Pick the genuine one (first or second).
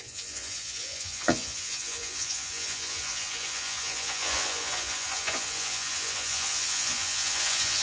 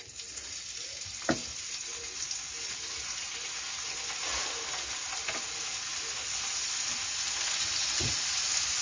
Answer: second